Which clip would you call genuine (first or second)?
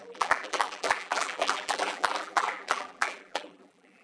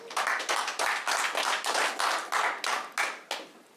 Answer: second